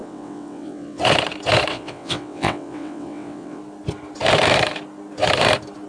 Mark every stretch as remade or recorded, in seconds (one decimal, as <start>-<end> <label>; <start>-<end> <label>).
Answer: 0.0-1.0 remade; 1.0-1.7 recorded; 1.7-3.6 remade; 3.6-5.9 recorded